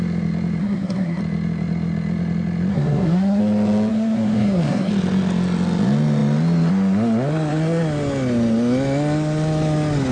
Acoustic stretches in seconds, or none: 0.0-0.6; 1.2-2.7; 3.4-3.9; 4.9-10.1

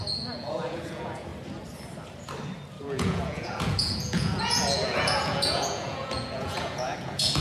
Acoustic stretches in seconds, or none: 1.3-2.8

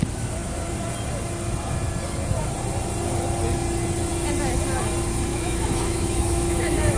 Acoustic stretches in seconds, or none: 0.0-5.3

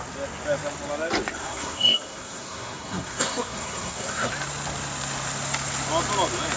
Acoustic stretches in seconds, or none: 0.0-1.4; 4.3-6.6

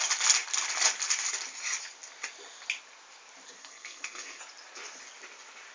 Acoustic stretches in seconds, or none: 0.0-3.6; 4.4-5.7